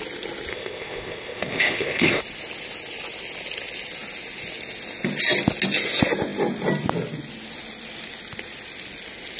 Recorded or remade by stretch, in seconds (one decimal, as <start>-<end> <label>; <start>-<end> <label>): 0.0-0.5 recorded; 0.5-2.2 remade; 2.2-9.4 recorded

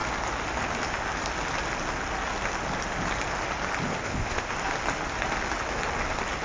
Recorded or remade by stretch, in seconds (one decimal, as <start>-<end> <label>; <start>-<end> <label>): 0.0-4.0 recorded; 4.0-4.5 remade; 4.5-6.4 recorded

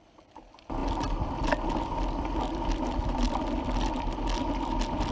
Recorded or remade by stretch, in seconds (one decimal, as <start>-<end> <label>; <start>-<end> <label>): 0.0-5.1 recorded

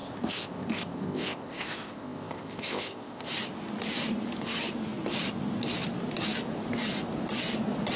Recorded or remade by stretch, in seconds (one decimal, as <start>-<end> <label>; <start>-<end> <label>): 0.0-3.3 remade; 3.3-8.0 recorded

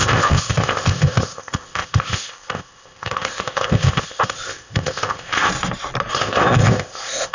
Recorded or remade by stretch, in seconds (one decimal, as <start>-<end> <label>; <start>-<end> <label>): 0.0-5.5 remade; 5.5-6.1 recorded; 6.1-7.3 remade

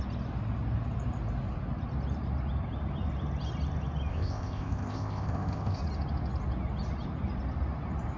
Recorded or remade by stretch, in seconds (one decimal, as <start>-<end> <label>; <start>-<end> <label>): 0.0-4.1 recorded; 4.1-5.8 remade; 5.8-8.2 recorded

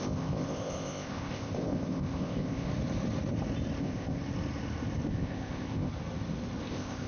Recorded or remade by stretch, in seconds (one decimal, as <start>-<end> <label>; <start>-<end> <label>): 0.0-2.7 remade; 2.7-3.8 recorded; 3.8-4.2 remade; 4.2-5.1 recorded; 5.1-5.9 remade; 5.9-6.6 recorded; 6.6-7.1 remade